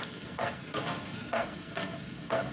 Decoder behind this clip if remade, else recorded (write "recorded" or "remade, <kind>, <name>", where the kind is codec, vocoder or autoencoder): remade, codec, SNAC